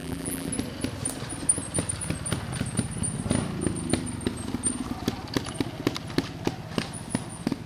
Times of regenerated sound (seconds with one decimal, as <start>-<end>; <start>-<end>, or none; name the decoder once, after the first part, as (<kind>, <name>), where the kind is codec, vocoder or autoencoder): 0.0-0.5 (vocoder, BigVGAN v2)